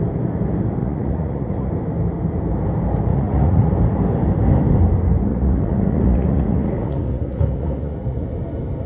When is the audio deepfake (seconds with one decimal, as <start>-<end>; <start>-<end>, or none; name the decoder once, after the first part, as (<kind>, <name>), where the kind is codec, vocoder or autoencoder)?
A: 0.8-1.7 (vocoder, Vocos); 3.1-3.7; 5.3-8.3